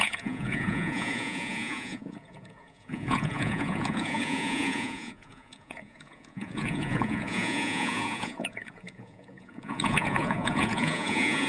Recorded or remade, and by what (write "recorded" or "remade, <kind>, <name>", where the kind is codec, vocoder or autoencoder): remade, vocoder, Vocos